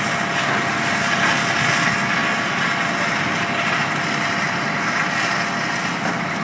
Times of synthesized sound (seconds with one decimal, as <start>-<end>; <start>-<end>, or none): none